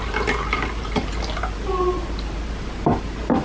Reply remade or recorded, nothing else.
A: remade